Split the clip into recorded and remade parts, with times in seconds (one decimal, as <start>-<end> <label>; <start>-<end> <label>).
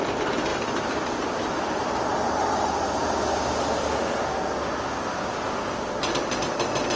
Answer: 0.0-7.0 recorded